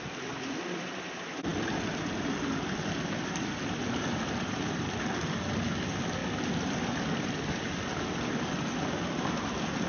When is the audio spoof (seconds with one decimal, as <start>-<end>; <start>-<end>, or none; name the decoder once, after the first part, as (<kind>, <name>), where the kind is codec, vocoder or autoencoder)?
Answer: 0.0-6.2 (vocoder, BigVGAN v2); 6.9-9.9